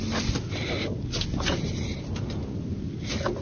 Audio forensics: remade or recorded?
recorded